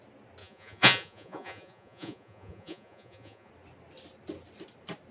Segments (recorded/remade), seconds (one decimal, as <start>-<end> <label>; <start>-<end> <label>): 0.0-0.4 recorded; 0.4-3.5 remade; 3.5-5.1 recorded